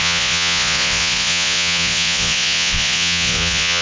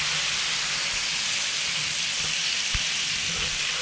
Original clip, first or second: second